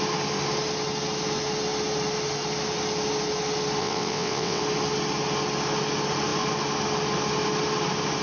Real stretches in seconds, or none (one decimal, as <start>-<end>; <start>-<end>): 0.0-3.8; 4.6-8.2